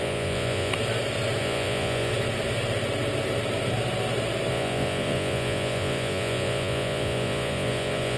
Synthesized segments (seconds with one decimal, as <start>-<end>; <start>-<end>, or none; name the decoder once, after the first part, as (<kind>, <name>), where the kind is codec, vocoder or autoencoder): 0.0-0.7 (vocoder, Vocos); 1.4-2.1; 4.5-8.2